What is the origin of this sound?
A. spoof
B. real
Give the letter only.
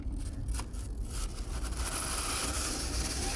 B